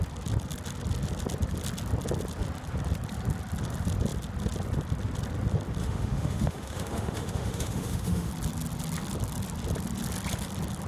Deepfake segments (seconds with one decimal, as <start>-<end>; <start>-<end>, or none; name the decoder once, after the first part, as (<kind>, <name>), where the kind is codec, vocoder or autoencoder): 5.8-8.3 (autoencoder, DAC-VAE)